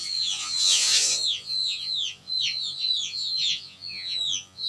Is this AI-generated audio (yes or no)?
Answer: yes